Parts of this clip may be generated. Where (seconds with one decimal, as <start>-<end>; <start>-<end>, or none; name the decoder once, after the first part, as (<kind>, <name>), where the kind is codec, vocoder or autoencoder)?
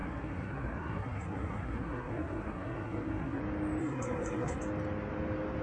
0.0-3.4 (codec, SNAC); 3.8-4.6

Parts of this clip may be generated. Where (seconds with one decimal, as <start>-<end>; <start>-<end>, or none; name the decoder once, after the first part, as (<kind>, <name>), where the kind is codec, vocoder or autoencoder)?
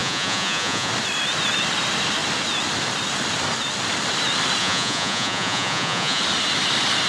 0.0-0.9 (vocoder, Vocos); 4.6-6.2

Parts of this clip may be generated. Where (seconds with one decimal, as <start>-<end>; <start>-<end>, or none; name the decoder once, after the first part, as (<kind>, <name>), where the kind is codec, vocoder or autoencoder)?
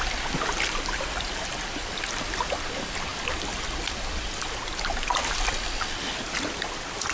none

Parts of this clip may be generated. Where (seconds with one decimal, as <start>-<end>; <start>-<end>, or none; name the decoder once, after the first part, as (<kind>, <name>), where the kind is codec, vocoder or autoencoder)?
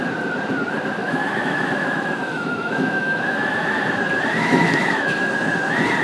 1.0-3.8 (autoencoder, DAC-VAE); 4.4-5.3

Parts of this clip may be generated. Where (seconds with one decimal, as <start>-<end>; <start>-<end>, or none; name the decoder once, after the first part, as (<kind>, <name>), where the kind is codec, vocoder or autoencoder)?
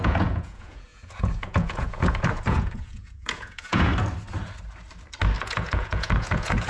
0.0-3.9 (vocoder, Vocos); 5.4-6.7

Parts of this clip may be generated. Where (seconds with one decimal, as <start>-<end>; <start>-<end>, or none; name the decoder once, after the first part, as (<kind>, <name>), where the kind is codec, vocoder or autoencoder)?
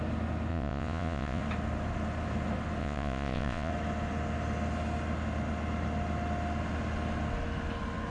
0.5-1.4 (vocoder, Vocos); 2.8-3.7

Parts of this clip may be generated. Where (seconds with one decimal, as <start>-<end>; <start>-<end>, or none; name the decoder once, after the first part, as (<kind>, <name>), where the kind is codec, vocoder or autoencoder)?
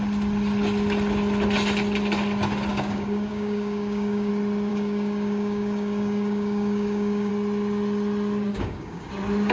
2.7-4.3 (codec, DAC); 4.7-7.3; 8.5-9.1